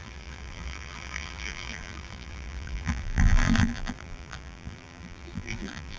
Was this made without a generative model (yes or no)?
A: no